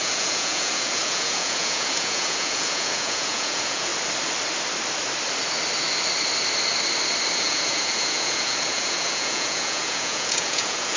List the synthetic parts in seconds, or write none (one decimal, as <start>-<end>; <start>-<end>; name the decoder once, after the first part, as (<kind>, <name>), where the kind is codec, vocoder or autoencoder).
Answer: 0.0-3.9 (vocoder, Vocos); 7.4-11.0